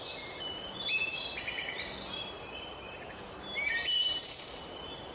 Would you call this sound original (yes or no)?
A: no